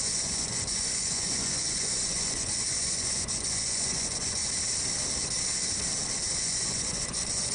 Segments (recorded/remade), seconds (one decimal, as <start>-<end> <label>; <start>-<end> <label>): 0.0-4.4 remade; 4.4-6.3 recorded; 6.3-7.5 remade

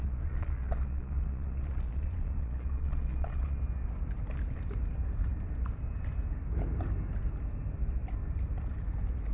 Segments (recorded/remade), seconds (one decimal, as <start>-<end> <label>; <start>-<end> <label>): 0.0-3.6 remade; 3.6-9.3 recorded

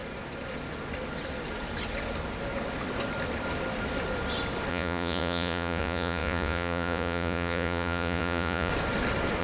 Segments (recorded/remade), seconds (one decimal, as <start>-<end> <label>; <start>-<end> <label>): 0.0-4.7 recorded; 4.7-8.7 remade; 8.7-9.4 recorded

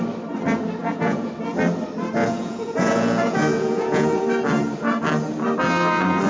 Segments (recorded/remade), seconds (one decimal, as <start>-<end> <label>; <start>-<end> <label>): 0.0-0.8 recorded; 0.8-1.3 remade; 1.3-2.2 recorded; 2.2-4.2 remade; 4.2-6.3 recorded

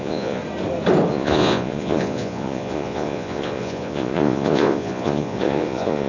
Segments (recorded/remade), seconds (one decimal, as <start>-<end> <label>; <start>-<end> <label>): 0.0-0.4 remade; 0.4-1.1 recorded; 1.1-6.1 remade